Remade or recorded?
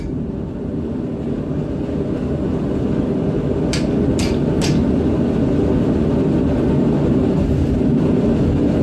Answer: recorded